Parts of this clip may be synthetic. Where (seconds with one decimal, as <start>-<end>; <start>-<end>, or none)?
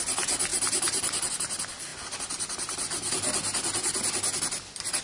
0.5-1.3; 1.9-3.1